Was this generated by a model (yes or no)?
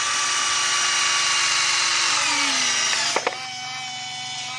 no